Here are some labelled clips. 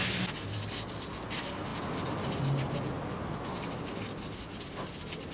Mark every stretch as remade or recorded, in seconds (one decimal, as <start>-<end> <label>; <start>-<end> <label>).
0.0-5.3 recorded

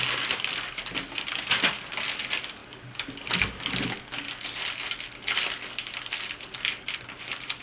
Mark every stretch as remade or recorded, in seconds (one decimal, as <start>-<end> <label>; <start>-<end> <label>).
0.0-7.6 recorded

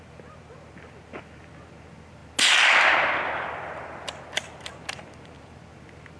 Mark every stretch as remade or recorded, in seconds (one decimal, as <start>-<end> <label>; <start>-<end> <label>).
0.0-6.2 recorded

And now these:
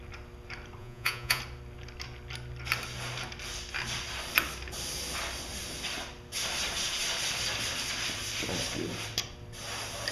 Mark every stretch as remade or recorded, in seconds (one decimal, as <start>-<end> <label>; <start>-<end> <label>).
0.0-0.8 recorded; 0.8-1.4 remade; 1.4-10.1 recorded